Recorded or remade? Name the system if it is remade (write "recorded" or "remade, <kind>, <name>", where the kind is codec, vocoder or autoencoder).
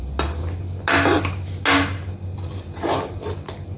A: recorded